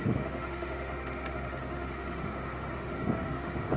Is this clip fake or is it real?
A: fake